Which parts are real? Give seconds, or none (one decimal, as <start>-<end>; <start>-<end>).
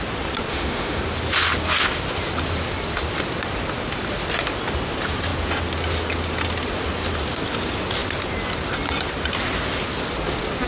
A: 0.0-0.5; 1.0-10.7